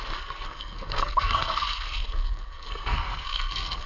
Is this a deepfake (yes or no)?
yes